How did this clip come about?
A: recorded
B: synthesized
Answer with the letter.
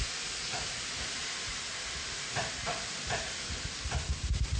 A